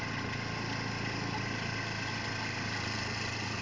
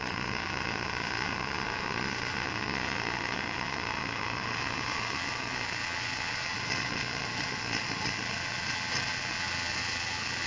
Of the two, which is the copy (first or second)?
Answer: second